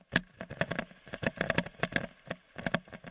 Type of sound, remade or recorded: recorded